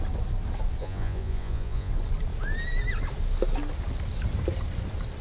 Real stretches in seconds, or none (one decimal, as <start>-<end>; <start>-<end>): 0.0-0.8; 1.9-5.2